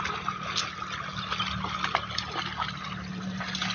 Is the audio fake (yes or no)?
no